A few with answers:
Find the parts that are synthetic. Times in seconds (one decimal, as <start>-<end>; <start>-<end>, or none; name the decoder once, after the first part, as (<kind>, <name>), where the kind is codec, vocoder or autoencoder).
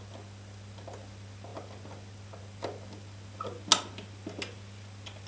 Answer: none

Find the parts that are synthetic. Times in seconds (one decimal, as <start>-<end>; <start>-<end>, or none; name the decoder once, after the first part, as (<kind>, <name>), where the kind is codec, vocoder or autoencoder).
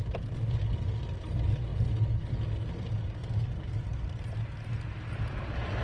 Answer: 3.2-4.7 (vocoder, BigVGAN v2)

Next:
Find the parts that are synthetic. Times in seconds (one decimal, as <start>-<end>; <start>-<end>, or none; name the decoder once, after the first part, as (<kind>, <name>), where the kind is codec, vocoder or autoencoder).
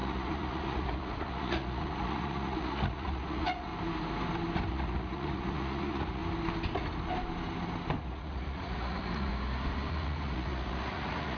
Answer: 0.0-3.7 (vocoder, Vocos); 4.7-6.2; 8.0-9.3; 9.9-11.4